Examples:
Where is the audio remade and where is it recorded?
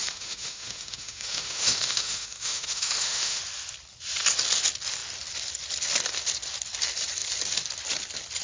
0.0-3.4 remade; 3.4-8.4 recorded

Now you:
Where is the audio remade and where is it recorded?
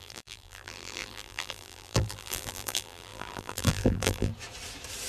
0.0-4.3 remade; 4.3-5.1 recorded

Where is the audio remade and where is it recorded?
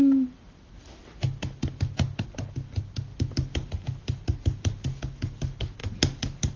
0.0-6.6 recorded